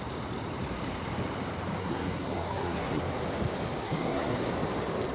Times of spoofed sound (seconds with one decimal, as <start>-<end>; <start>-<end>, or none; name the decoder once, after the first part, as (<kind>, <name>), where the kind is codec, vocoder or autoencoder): 1.8-3.0 (codec, SNAC); 3.8-4.4